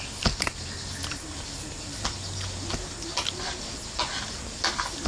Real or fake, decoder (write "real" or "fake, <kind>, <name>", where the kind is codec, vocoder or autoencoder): real